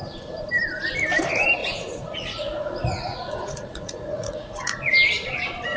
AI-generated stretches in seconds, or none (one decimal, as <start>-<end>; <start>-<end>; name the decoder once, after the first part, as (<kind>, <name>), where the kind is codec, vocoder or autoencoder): 1.6-4.8 (vocoder, Vocos)